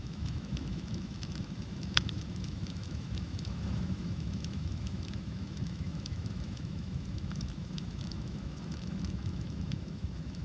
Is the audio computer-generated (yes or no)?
yes